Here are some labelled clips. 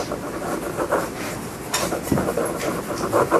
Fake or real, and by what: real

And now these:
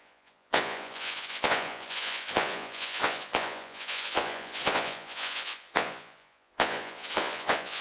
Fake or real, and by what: fake, vocoder, Vocos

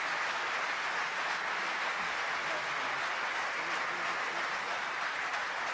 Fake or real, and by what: real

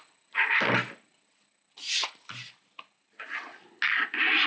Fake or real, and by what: real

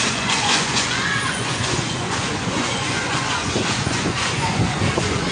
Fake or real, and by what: fake, vocoder, Vocos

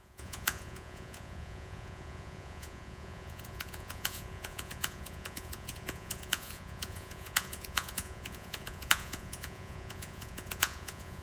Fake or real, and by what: fake, vocoder, Vocos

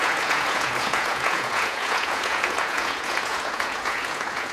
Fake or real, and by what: fake, vocoder, Vocos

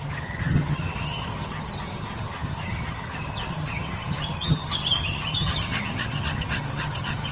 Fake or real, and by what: fake, vocoder, HiFi-GAN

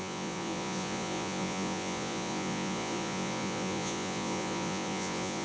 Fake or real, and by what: fake, vocoder, Vocos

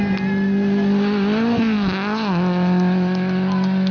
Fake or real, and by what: real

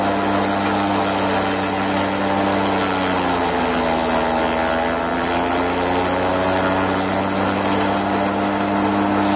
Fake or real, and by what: real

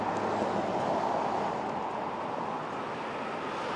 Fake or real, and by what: real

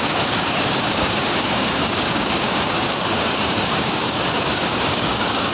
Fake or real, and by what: fake, codec, DAC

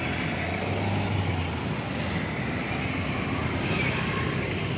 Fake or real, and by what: real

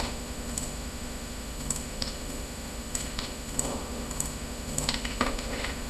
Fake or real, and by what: fake, autoencoder, DAC-VAE